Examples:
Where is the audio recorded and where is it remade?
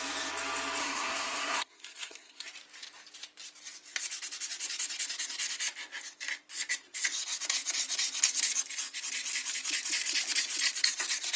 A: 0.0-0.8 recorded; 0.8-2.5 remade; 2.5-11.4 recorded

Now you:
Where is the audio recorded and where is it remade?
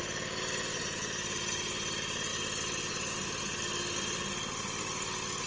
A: 0.0-5.5 recorded